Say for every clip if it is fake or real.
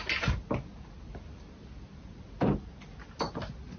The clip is real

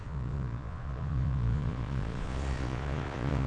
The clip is fake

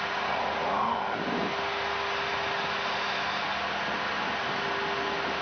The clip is real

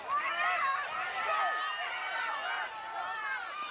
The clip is real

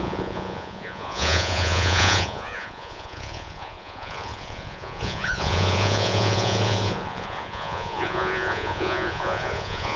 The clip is fake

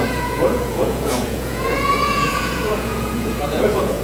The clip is fake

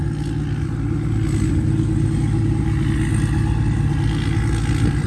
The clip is real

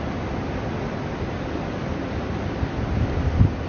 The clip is real